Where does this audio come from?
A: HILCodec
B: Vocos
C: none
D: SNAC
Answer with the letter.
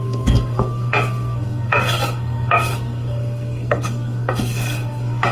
D